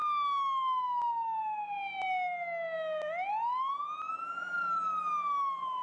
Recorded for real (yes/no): yes